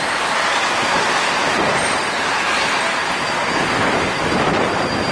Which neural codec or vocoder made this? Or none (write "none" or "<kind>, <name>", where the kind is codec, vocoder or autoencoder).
none